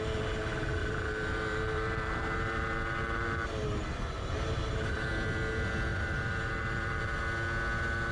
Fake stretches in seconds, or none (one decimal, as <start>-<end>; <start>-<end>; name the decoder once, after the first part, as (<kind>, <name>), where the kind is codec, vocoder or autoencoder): 0.8-5.1 (vocoder, BigVGAN v2); 5.9-7.2